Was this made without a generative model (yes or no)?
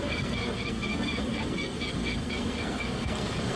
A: no